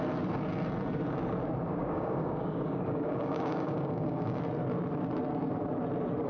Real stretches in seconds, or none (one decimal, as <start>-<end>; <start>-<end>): 0.0-1.8; 4.4-6.3